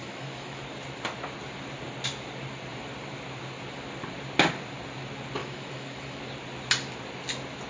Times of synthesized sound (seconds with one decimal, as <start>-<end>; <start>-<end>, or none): 0.0-0.6; 5.4-6.2